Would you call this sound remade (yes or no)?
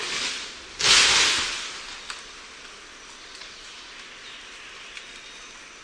no